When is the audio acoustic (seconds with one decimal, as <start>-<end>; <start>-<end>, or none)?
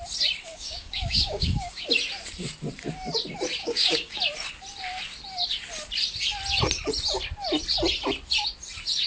0.0-0.5; 1.9-3.6; 4.2-9.1